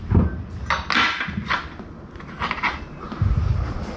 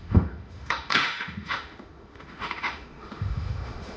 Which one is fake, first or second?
second